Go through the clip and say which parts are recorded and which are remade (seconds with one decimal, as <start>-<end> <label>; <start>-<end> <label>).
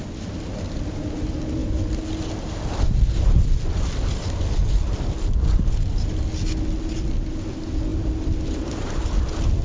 0.0-9.6 recorded